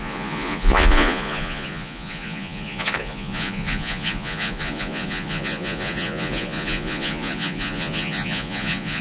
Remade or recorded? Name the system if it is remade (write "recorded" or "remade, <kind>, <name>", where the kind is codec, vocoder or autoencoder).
remade, vocoder, Vocos